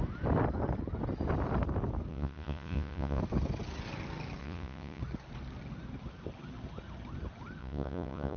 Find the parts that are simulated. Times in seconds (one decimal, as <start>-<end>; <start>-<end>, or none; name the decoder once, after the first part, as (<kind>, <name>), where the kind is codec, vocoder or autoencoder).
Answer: 2.1-3.2 (vocoder, Vocos); 4.4-5.0; 7.6-8.4